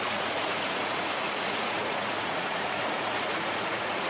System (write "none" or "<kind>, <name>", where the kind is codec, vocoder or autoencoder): vocoder, Vocos